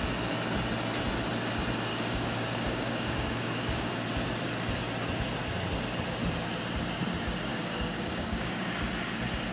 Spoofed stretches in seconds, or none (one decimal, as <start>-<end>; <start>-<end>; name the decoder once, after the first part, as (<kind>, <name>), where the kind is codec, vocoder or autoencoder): 1.9-3.9 (codec, DAC); 7.5-8.8